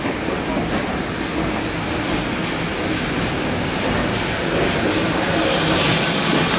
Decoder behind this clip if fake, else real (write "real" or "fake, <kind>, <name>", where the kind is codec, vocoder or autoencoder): real